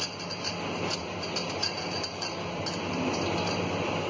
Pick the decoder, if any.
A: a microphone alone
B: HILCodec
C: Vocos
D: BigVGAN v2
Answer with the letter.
A